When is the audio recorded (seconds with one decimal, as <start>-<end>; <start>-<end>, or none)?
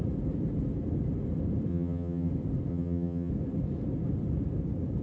0.0-1.7; 2.3-2.7; 3.3-5.0